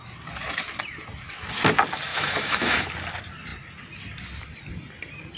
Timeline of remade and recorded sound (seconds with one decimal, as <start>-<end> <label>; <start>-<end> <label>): 0.0-2.1 recorded; 2.1-2.9 remade; 2.9-5.4 recorded